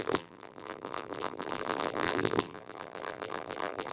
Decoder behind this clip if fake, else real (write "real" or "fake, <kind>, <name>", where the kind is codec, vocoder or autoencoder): fake, vocoder, BigVGAN v2